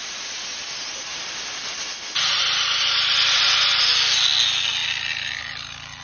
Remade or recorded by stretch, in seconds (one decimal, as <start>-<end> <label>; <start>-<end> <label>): 0.0-6.0 recorded